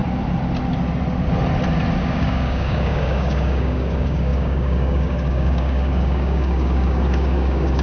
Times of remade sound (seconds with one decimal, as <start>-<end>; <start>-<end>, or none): 2.0-7.8